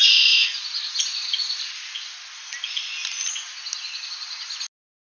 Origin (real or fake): real